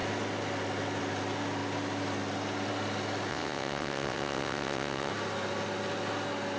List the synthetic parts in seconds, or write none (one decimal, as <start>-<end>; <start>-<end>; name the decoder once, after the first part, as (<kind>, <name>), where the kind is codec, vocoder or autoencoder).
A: 3.3-5.1 (vocoder, WaveNeXt)